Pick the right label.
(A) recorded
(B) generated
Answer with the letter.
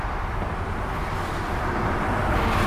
A